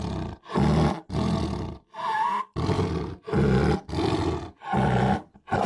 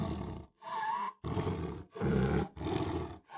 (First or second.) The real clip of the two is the first